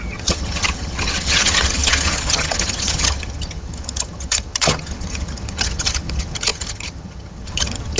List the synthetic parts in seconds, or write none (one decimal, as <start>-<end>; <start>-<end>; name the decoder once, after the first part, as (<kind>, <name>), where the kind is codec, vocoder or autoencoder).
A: 0.0-8.0 (vocoder, HiFi-GAN)